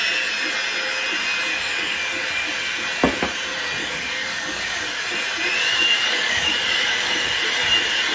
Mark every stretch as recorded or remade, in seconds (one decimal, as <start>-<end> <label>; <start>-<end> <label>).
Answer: 0.0-1.5 recorded; 1.5-2.5 remade; 2.5-3.8 recorded; 3.8-5.0 remade; 5.0-5.6 recorded; 5.6-7.4 remade; 7.4-8.1 recorded